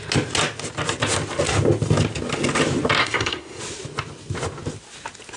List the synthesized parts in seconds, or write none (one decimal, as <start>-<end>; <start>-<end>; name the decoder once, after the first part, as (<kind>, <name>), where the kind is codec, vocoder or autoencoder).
3.0-3.6 (codec, SNAC)